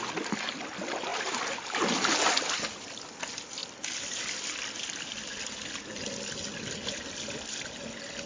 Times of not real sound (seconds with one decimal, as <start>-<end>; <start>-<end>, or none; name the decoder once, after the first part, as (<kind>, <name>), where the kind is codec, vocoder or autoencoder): none